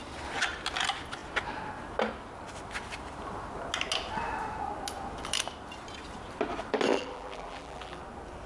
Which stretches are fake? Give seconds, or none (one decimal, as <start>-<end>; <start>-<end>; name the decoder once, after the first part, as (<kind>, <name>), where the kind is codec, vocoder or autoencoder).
6.9-8.0 (vocoder, BigVGAN v2)